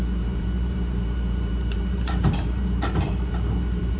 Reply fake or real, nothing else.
fake